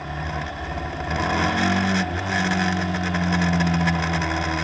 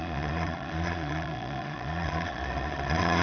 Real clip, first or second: first